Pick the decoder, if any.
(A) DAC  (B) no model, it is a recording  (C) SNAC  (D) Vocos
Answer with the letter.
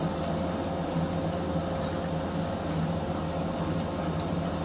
B